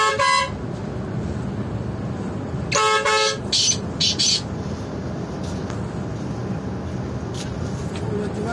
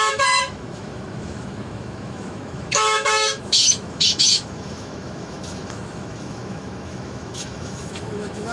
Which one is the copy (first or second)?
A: second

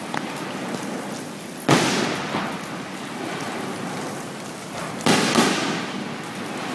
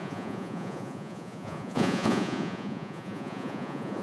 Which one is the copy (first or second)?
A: second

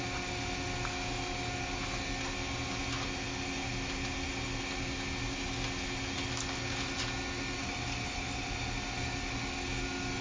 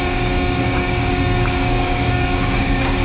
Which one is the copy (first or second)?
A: second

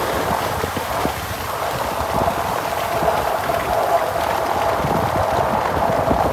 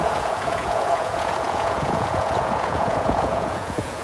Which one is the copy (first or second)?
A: second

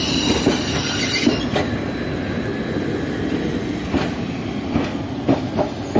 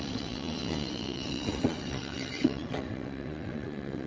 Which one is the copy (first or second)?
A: second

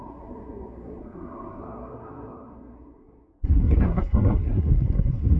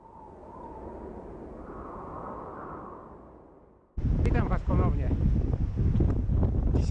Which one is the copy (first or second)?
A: first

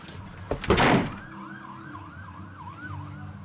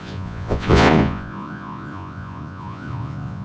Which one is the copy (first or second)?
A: second